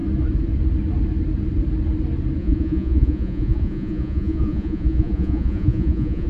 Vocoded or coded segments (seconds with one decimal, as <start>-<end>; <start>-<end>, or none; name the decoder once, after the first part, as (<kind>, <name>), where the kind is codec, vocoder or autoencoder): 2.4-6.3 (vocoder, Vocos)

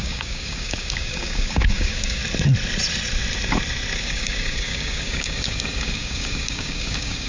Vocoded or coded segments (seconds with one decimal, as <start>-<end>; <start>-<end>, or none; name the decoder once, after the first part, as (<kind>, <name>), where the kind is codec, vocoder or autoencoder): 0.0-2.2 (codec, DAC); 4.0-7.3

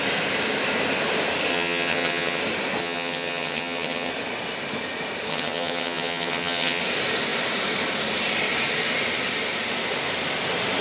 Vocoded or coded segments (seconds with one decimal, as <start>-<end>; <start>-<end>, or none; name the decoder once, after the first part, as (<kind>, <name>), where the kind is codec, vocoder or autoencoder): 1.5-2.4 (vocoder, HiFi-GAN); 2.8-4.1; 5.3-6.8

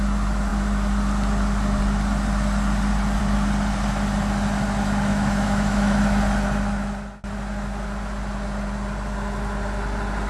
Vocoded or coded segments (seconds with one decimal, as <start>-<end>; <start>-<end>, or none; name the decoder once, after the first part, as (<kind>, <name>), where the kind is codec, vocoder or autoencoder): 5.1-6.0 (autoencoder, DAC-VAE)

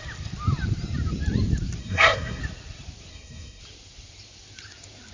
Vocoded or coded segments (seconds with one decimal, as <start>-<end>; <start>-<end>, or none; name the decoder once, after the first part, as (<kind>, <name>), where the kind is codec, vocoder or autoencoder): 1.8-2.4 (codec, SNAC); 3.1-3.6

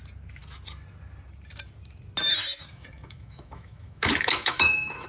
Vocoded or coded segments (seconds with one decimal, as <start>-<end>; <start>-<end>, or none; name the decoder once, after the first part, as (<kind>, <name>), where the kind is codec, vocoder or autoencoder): 2.3-5.1 (autoencoder, DAC-VAE)

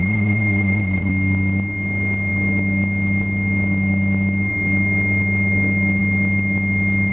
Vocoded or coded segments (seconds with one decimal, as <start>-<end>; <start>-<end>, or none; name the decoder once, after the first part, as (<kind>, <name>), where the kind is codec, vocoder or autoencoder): 0.0-1.1 (vocoder, Vocos)